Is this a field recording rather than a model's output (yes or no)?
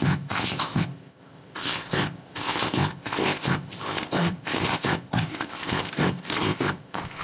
no